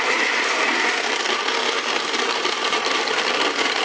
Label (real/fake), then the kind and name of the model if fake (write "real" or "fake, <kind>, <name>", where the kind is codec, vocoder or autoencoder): fake, vocoder, BigVGAN v2